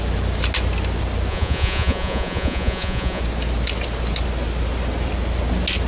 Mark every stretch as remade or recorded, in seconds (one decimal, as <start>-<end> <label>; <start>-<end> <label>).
0.0-1.3 recorded; 1.3-3.2 remade; 3.2-5.9 recorded